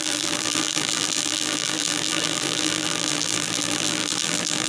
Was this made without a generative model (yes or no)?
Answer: no